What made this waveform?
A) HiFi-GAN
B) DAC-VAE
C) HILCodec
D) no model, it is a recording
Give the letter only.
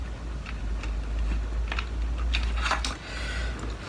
D